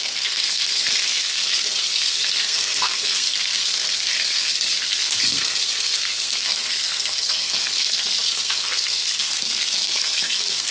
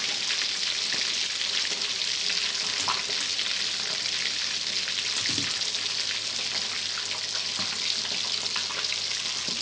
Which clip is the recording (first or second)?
second